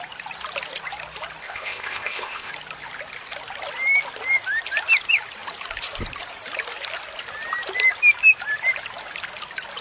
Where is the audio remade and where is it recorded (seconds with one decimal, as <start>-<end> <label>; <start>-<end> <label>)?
0.0-1.4 recorded; 1.4-2.5 remade; 2.5-9.8 recorded